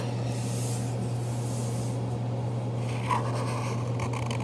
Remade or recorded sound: recorded